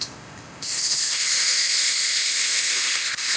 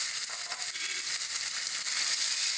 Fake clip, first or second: first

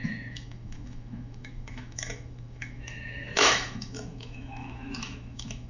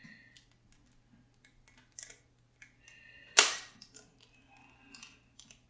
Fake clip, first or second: first